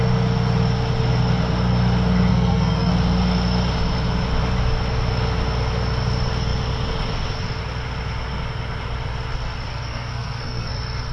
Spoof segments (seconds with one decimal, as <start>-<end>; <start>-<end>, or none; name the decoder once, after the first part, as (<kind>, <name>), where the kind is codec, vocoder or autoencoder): 2.3-2.9 (codec, SNAC); 9.7-10.7